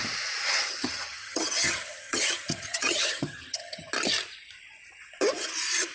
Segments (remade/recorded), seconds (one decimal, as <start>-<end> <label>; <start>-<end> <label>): 0.0-0.4 recorded; 0.4-3.9 remade; 3.9-5.9 recorded

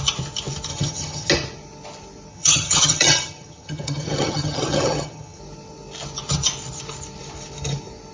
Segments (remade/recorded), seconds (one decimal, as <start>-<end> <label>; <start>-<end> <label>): 0.0-0.7 recorded; 0.7-1.3 remade; 1.3-2.3 recorded; 2.3-5.4 remade; 5.4-8.1 recorded

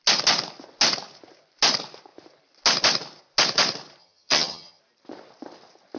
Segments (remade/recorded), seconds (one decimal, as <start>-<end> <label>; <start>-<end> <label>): 0.0-4.0 recorded; 4.0-4.8 remade; 4.8-6.0 recorded

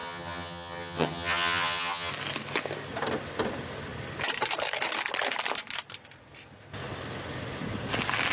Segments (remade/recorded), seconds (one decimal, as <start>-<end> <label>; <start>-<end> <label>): 0.0-2.1 remade; 2.1-8.3 recorded

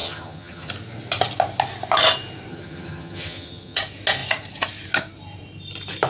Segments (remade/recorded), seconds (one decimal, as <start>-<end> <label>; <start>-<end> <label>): 0.0-0.7 remade; 0.7-2.5 recorded; 2.5-3.8 remade; 3.8-6.1 recorded

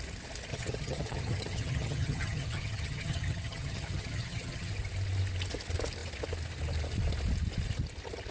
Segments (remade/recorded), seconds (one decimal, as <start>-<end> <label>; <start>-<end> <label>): 0.0-0.5 recorded; 0.5-4.7 remade; 4.7-8.3 recorded